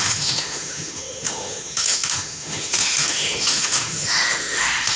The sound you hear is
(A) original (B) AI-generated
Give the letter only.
B